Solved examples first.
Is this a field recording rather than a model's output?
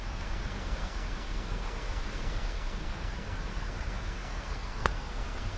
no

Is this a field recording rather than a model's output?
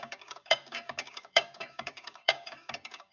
no